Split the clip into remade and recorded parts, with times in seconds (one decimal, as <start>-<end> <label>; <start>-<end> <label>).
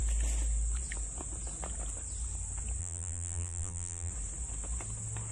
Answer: 0.0-2.8 recorded; 2.8-4.1 remade; 4.1-5.3 recorded